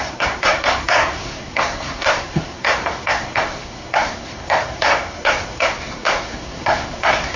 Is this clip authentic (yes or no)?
no